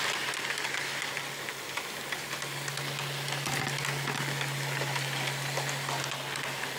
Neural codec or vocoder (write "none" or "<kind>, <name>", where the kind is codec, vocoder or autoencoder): none